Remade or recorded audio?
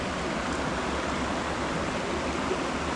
recorded